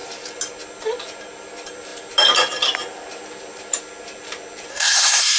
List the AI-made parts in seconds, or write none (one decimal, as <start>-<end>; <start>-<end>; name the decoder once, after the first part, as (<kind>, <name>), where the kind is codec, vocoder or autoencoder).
4.7-5.4 (codec, SNAC)